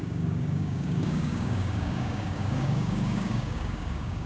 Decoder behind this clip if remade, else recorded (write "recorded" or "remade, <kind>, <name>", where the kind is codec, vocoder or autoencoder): remade, codec, DAC